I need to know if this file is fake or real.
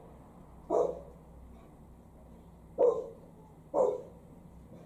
real